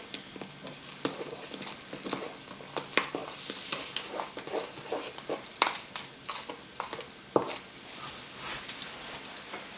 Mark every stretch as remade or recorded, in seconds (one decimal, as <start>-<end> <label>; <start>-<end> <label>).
0.0-9.8 recorded